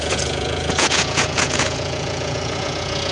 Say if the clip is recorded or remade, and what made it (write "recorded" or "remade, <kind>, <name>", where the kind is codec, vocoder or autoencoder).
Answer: remade, vocoder, Vocos